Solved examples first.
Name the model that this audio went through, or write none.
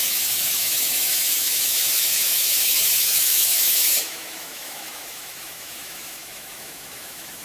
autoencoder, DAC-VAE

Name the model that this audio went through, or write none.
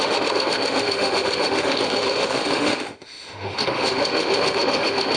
autoencoder, DAC-VAE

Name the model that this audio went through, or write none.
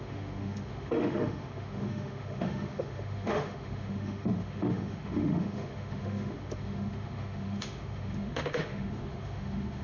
autoencoder, DAC-VAE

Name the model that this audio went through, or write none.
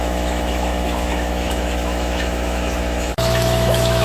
autoencoder, DAC-VAE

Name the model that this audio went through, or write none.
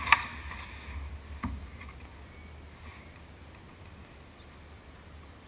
none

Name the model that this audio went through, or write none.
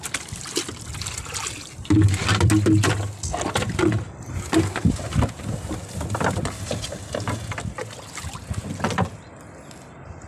none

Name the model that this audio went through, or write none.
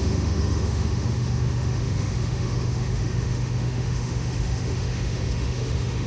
autoencoder, DAC-VAE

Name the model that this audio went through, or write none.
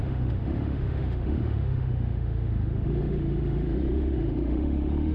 autoencoder, DAC-VAE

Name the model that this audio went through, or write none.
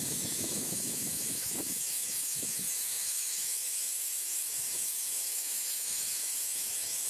autoencoder, DAC-VAE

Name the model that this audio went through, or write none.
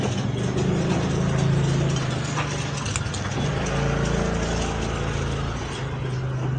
none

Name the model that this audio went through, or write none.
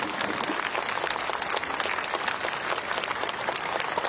none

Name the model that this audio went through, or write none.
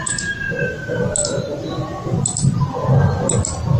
none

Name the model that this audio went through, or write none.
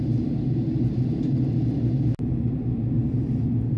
none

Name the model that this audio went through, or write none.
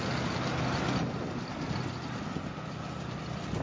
none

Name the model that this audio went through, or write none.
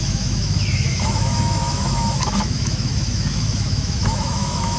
autoencoder, DAC-VAE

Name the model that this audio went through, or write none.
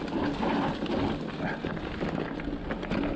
none